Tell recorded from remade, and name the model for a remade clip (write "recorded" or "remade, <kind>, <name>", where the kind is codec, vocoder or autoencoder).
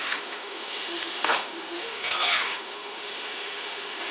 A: remade, autoencoder, DAC-VAE